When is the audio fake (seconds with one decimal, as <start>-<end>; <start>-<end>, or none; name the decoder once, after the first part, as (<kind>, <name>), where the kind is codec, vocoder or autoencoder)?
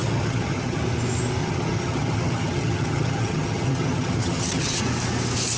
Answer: 0.0-0.8 (vocoder, HiFi-GAN); 1.4-4.8